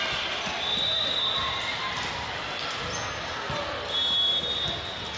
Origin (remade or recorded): recorded